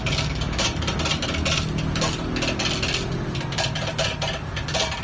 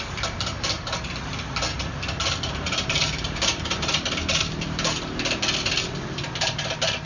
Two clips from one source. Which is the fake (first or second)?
second